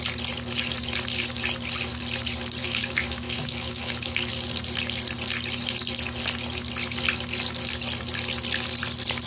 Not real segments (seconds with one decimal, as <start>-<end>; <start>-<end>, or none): 2.6-4.3